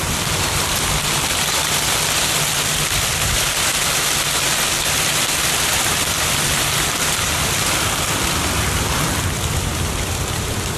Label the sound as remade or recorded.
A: remade